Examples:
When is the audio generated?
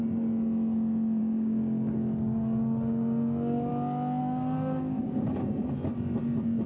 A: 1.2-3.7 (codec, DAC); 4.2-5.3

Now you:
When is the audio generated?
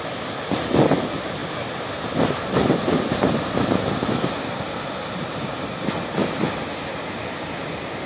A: 1.4-4.2 (vocoder, BigVGAN v2); 6.2-7.3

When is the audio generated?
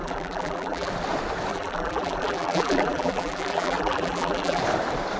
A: 0.0-0.9 (vocoder, BigVGAN v2); 1.5-4.6